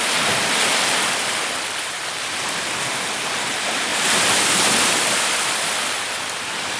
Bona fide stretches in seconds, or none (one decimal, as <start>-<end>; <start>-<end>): 0.0-3.9; 5.8-6.8